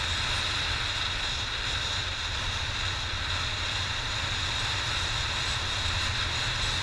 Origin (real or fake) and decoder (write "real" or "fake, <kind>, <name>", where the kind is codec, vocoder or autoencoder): real